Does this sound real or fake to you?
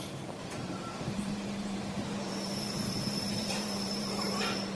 fake